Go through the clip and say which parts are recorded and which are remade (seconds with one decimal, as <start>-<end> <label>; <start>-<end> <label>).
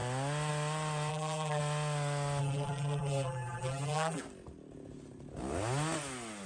0.0-1.1 recorded; 1.1-1.6 remade; 1.6-2.4 recorded; 2.4-4.2 remade; 4.2-6.5 recorded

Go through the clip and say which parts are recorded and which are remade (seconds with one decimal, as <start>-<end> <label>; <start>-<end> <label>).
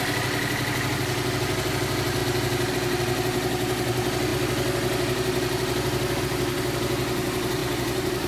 0.0-7.6 recorded; 7.6-8.3 remade